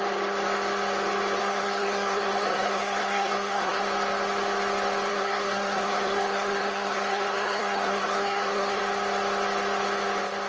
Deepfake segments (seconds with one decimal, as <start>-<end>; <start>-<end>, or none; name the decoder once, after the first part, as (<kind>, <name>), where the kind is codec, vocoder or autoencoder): 1.4-3.8 (codec, SNAC); 5.1-8.8